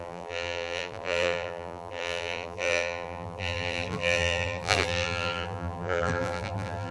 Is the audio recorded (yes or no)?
no